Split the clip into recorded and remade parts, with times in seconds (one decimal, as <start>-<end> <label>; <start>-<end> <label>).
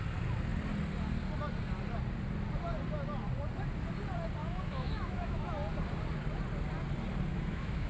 0.0-4.4 recorded; 4.4-5.4 remade; 5.4-7.3 recorded; 7.3-7.9 remade